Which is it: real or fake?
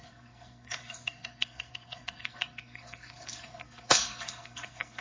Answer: fake